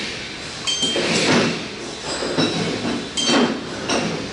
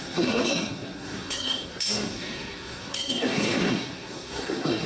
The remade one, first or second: second